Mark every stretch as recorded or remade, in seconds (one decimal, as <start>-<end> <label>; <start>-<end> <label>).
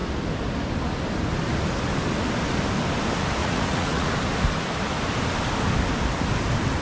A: 0.0-3.4 recorded; 3.4-4.1 remade; 4.1-6.8 recorded